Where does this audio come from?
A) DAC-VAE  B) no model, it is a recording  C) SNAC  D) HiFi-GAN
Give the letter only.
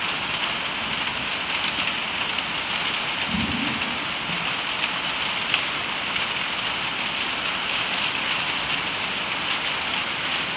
B